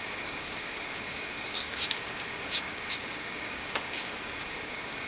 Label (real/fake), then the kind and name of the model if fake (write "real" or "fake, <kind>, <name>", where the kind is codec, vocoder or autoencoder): fake, codec, DAC